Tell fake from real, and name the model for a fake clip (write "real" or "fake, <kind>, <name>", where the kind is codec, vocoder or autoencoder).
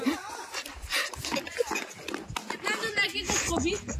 real